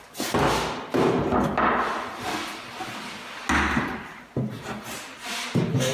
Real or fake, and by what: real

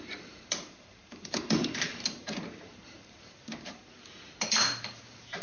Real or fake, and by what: fake, vocoder, BigVGAN v2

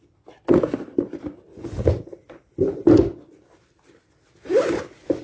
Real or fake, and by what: real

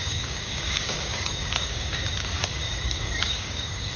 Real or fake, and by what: fake, codec, DAC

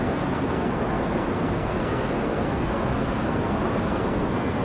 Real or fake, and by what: fake, codec, SNAC